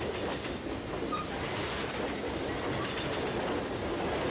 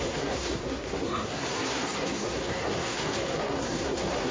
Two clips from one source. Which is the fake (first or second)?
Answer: second